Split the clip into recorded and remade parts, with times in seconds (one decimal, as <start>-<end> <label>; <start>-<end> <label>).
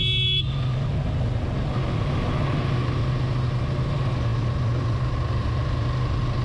0.0-6.4 recorded